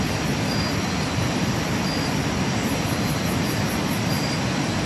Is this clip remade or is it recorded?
recorded